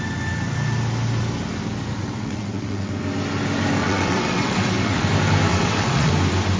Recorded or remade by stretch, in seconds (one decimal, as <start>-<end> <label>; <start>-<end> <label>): 0.0-2.0 recorded; 2.0-2.9 remade; 2.9-3.8 recorded; 3.8-5.0 remade; 5.0-5.5 recorded; 5.5-6.1 remade; 6.1-6.6 recorded